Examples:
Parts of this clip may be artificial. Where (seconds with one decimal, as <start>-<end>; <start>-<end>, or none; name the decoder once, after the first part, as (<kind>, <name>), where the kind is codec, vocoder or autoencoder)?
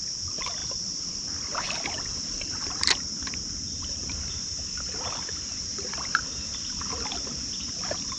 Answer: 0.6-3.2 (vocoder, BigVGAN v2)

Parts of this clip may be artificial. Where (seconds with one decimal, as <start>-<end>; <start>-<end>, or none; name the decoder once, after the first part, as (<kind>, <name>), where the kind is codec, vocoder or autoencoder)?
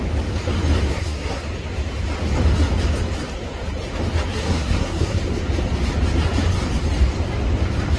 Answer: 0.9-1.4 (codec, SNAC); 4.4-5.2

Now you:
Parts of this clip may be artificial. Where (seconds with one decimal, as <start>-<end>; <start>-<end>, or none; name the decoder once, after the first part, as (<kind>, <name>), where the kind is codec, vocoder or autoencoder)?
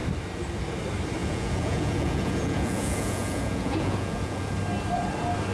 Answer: 1.2-4.5 (vocoder, Vocos)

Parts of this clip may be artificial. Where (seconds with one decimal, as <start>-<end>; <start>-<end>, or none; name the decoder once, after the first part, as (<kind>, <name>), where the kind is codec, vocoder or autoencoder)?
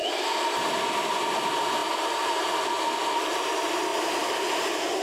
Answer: none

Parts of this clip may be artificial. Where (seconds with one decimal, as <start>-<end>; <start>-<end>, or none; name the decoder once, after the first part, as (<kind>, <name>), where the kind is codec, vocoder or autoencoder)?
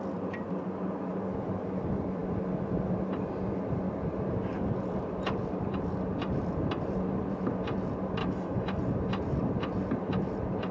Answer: 8.2-8.8 (autoencoder, DAC-VAE)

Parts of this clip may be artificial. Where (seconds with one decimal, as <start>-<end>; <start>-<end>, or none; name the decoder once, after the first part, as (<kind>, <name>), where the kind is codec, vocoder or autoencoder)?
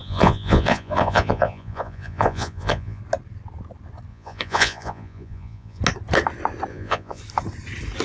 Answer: 0.0-3.0 (vocoder, Vocos); 4.1-5.8; 6.7-7.2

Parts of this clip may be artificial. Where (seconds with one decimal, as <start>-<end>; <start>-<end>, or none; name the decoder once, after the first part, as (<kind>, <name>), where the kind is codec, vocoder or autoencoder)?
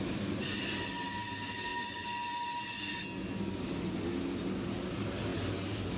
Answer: none